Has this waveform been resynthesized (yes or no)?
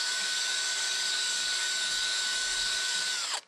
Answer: yes